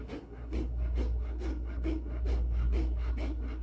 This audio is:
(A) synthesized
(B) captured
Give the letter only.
A